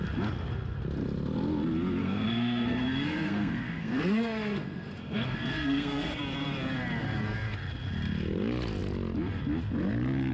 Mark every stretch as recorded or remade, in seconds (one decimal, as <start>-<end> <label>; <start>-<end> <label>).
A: 0.0-2.0 recorded; 2.0-6.2 remade; 6.2-10.3 recorded